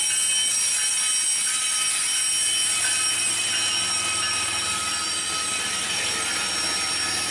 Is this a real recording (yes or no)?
yes